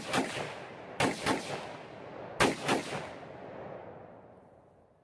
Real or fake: real